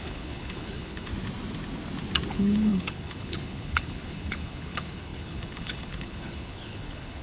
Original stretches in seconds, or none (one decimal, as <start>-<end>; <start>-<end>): 1.1-2.3